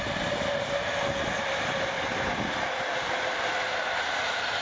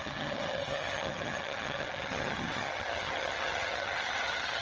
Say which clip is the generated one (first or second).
second